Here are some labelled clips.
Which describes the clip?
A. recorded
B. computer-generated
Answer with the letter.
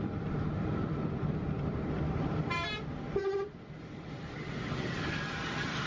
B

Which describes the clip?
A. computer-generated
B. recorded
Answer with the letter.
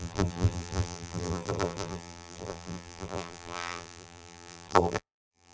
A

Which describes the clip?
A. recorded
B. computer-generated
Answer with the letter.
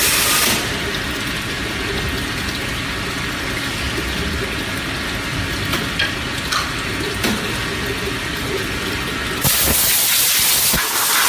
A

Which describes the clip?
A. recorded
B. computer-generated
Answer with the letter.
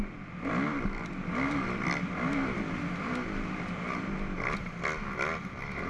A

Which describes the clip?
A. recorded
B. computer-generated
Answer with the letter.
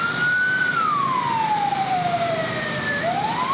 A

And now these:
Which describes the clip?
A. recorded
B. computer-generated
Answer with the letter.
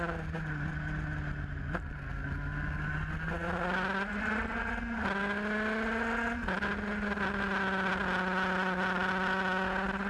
A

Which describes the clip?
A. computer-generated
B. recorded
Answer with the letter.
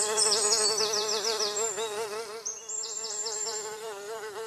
A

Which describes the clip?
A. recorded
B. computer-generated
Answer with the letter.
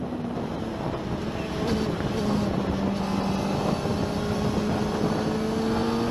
A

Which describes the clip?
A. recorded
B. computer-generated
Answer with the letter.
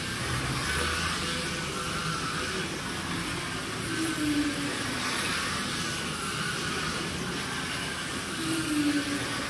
A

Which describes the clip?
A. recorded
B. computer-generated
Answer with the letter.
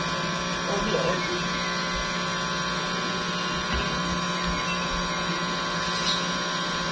A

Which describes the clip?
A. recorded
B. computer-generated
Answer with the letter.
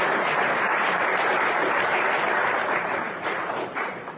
B